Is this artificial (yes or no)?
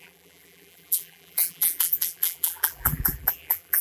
yes